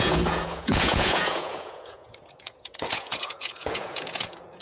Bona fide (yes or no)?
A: no